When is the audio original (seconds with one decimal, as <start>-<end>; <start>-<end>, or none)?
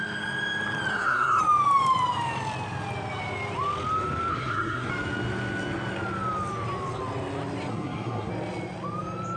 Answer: 0.0-0.9; 1.4-4.3; 4.9-7.7; 8.3-9.4